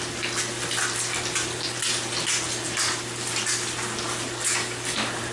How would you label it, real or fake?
real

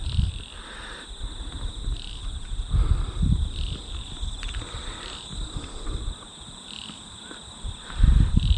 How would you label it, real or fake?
real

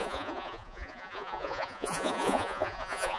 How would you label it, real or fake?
fake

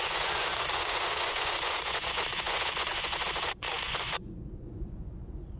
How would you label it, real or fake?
fake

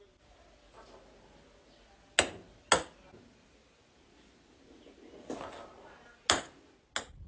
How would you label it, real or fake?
real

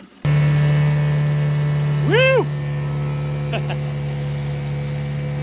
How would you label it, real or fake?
real